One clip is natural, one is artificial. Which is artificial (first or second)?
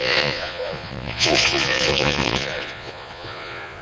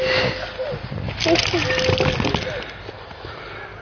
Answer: first